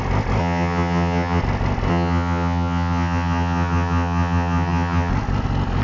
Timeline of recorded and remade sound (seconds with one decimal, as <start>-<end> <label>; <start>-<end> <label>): 0.0-0.4 recorded; 0.4-1.4 remade; 1.4-1.9 recorded; 1.9-5.1 remade; 5.1-5.8 recorded